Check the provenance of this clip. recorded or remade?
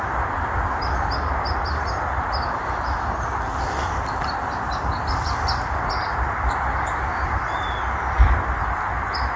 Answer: recorded